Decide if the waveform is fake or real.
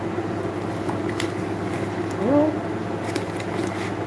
real